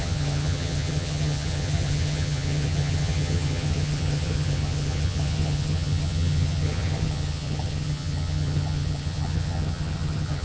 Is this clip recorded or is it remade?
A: remade